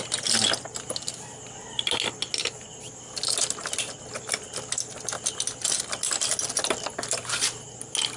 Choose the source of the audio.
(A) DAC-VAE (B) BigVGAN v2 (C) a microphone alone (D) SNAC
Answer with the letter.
C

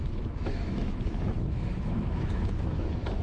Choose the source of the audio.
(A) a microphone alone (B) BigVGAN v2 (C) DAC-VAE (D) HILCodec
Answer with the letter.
C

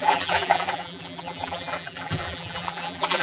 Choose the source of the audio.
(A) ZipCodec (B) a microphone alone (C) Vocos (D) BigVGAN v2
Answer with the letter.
D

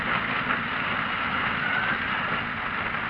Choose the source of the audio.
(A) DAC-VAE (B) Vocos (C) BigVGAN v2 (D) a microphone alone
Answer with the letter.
D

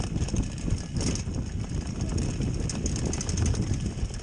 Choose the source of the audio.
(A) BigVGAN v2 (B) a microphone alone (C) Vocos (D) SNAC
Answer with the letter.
B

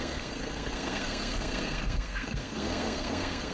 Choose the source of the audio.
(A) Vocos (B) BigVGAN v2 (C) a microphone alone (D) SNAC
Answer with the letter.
D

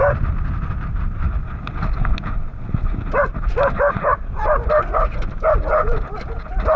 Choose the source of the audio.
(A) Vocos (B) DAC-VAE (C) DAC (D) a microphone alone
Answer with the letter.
D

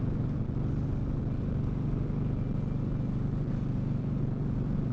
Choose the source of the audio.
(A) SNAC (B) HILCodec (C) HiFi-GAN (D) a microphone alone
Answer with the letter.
D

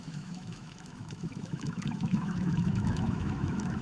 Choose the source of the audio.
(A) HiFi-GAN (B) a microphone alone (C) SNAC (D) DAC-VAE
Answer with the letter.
D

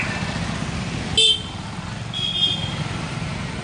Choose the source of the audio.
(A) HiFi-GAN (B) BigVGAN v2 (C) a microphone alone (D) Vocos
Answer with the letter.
C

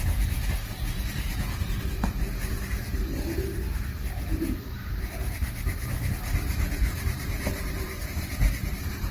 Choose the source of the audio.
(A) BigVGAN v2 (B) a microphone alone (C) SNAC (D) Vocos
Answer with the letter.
A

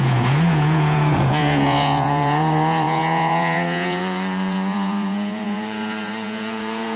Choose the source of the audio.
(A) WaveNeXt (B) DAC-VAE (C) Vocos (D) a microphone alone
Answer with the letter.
C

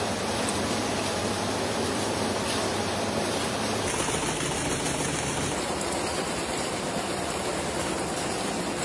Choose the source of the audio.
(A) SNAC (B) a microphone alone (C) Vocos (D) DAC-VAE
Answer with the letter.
B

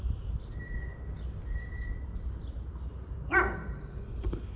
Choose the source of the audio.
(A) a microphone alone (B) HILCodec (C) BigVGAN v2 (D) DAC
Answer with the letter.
A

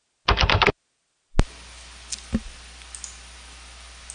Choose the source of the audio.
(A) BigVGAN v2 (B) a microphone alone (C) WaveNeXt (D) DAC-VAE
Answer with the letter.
B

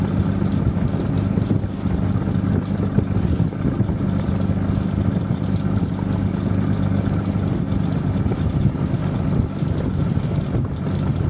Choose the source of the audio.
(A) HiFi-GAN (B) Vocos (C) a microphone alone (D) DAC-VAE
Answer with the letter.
C